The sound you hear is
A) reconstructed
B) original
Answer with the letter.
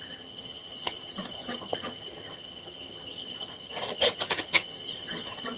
A